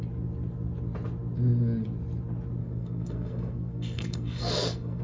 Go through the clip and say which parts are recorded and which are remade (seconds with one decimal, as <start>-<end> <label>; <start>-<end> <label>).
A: 0.0-2.6 recorded; 2.6-5.0 remade